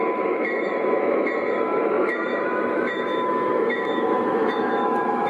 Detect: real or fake fake